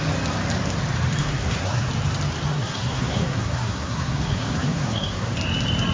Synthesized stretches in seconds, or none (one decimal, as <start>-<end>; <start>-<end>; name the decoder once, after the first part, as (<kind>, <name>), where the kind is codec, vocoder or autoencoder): 1.2-1.9 (codec, SNAC); 2.5-5.3